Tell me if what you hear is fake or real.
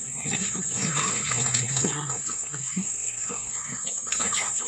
fake